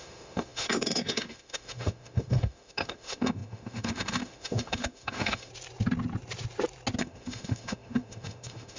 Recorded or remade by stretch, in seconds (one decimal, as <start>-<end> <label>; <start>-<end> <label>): 0.0-5.5 remade; 5.5-7.0 recorded; 7.0-8.8 remade